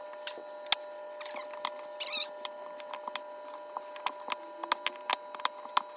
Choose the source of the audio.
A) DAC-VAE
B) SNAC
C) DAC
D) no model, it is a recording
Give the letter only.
D